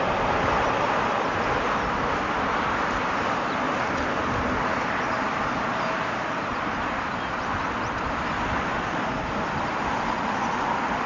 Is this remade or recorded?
recorded